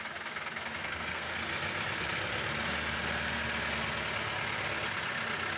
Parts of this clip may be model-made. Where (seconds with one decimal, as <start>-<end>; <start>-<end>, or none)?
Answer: 0.8-1.3